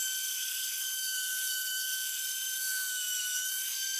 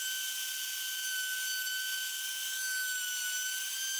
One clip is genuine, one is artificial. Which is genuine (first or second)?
second